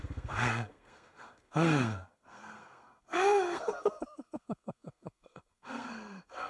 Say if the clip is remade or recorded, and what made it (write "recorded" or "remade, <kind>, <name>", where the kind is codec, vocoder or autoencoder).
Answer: remade, codec, SNAC